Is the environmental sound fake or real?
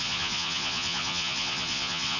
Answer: fake